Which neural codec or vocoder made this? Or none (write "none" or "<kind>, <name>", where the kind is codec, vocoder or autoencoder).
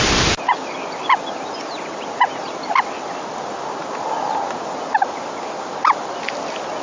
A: none